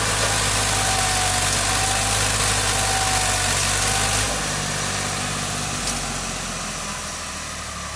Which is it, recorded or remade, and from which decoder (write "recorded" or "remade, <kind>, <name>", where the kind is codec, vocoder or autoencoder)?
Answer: recorded